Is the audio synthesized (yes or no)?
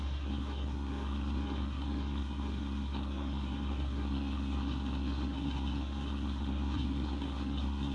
yes